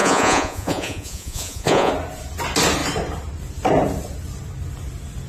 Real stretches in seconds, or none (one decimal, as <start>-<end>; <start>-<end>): 1.9-5.3